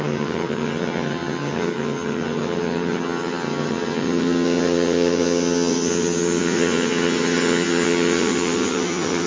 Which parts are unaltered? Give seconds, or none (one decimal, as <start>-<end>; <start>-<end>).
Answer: none